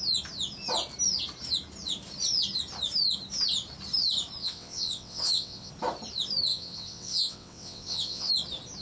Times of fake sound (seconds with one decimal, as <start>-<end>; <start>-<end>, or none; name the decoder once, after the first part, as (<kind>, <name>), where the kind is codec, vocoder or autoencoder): 4.4-5.7 (vocoder, WaveNeXt); 6.5-8.3